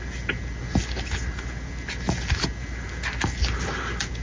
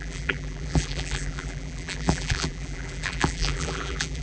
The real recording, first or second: first